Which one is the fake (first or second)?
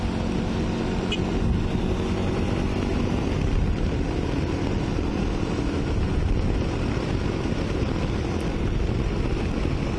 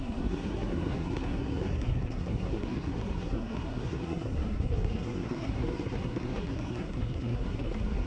second